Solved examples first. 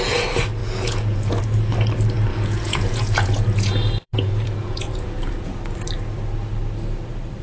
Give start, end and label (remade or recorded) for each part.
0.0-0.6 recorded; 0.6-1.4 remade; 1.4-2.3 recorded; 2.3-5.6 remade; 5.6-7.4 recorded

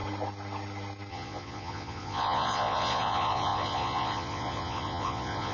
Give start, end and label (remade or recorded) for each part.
0.0-1.1 recorded; 1.1-5.5 remade

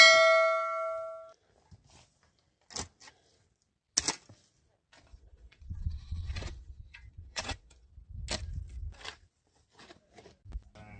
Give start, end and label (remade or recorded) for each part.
0.0-5.1 recorded; 5.1-7.9 remade; 7.9-11.0 recorded

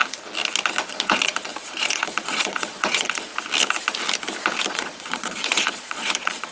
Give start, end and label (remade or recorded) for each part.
0.0-0.9 recorded; 0.9-3.3 remade; 3.3-4.7 recorded; 4.7-6.5 remade

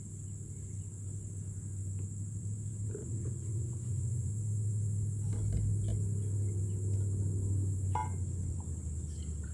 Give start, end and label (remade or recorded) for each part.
0.0-3.0 recorded; 3.0-4.3 remade; 4.3-9.5 recorded

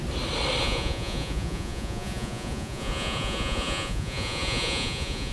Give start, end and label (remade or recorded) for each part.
0.0-0.6 recorded; 0.6-5.3 remade

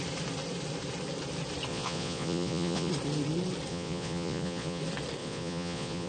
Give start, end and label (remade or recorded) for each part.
0.0-1.7 recorded; 1.7-2.9 remade; 2.9-3.7 recorded; 3.7-4.8 remade; 4.8-5.2 recorded; 5.2-6.1 remade

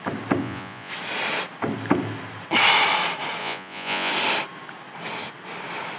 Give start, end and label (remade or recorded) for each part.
0.0-0.4 recorded; 0.4-0.9 remade; 0.9-3.4 recorded; 3.4-4.1 remade; 4.1-6.0 recorded